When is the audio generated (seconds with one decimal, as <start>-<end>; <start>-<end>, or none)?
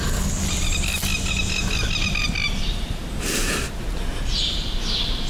2.2-4.3